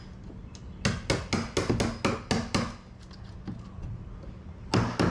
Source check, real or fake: real